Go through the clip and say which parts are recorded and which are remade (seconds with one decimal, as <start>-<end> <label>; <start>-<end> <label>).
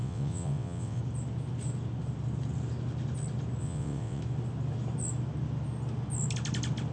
0.0-1.0 remade; 1.0-3.6 recorded; 3.6-4.2 remade; 4.2-6.9 recorded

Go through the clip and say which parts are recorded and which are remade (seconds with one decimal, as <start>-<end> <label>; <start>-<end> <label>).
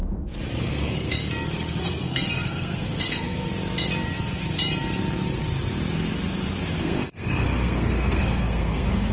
0.0-0.6 recorded; 0.6-1.1 remade; 1.1-1.8 recorded; 1.8-3.5 remade; 3.5-6.8 recorded; 6.8-9.1 remade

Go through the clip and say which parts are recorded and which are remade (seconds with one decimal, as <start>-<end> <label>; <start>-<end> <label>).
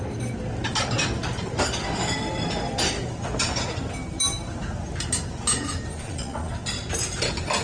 0.0-5.9 recorded; 5.9-6.5 remade; 6.5-7.6 recorded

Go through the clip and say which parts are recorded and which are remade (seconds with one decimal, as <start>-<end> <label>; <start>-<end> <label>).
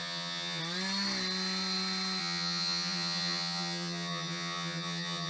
0.0-0.6 remade; 0.6-2.2 recorded; 2.2-5.3 remade